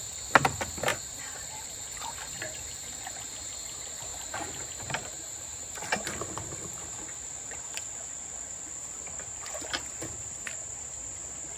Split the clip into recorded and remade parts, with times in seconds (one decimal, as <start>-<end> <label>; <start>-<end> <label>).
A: 0.0-0.9 recorded; 0.9-3.3 remade; 3.3-4.1 recorded; 4.1-8.7 remade; 8.7-11.6 recorded